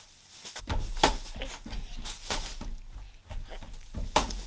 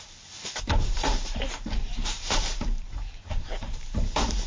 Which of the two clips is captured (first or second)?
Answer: first